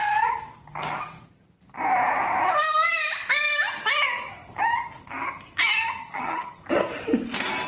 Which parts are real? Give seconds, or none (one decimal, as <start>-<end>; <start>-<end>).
0.0-6.0; 6.6-7.7